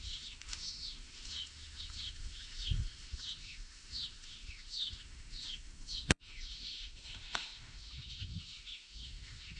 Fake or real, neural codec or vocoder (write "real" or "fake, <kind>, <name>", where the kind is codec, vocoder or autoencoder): fake, autoencoder, DAC-VAE